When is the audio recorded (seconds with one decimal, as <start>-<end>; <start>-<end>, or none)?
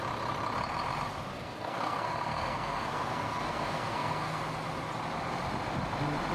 0.0-1.3; 4.4-6.3